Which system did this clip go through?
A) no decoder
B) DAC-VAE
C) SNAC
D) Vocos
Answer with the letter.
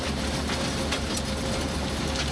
A